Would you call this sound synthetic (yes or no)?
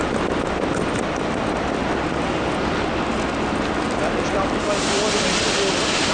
no